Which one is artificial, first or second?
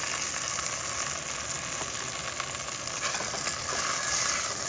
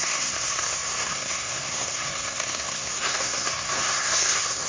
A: second